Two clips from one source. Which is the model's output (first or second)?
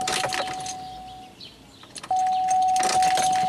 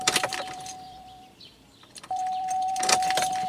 second